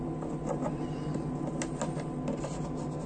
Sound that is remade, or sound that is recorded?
recorded